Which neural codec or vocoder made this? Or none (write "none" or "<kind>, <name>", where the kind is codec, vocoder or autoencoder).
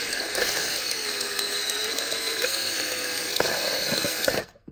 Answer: codec, SNAC